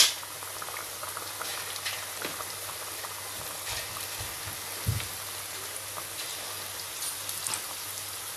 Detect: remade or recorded recorded